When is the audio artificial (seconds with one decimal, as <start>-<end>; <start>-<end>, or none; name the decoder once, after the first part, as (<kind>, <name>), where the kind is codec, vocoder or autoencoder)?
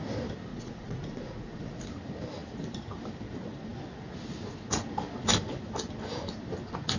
0.5-1.7 (vocoder, Vocos)